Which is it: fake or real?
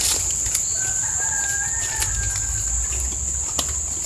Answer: real